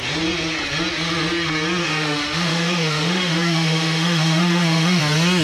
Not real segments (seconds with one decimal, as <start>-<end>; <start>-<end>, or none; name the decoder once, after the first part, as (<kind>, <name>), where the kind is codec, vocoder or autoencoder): 1.8-5.0 (autoencoder, DAC-VAE)